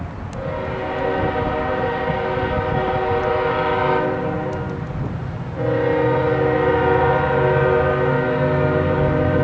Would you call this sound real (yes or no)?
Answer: yes